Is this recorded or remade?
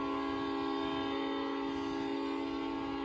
recorded